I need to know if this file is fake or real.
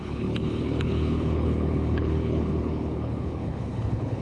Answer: fake